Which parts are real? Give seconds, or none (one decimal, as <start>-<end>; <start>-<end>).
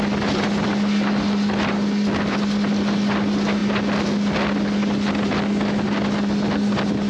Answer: 0.0-7.1